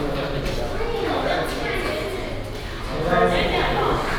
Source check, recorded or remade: recorded